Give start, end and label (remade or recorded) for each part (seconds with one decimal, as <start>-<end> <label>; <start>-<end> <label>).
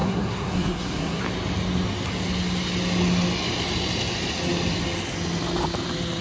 0.0-1.2 remade; 1.2-6.2 recorded